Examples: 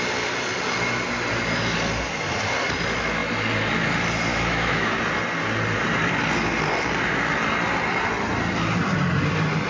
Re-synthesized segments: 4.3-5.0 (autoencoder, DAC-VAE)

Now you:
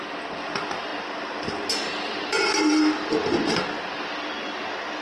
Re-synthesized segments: none